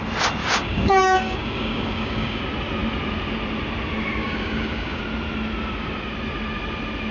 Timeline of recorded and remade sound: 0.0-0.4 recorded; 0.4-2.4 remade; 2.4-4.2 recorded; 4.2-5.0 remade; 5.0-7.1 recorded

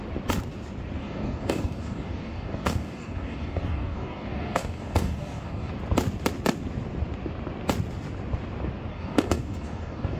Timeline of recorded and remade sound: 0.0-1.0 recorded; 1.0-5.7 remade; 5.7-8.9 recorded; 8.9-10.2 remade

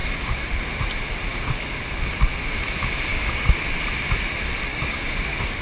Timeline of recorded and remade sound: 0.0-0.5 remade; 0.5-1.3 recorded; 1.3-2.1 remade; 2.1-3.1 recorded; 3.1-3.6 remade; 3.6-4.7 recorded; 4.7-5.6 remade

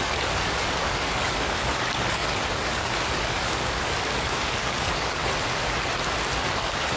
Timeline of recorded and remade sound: 0.0-5.2 remade; 5.2-6.6 recorded; 6.6-7.0 remade